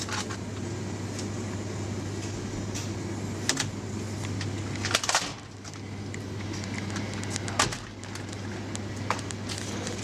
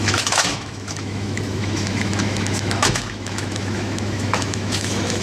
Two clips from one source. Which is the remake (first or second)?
second